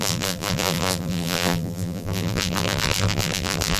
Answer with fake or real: fake